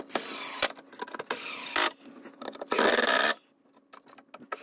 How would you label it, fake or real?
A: real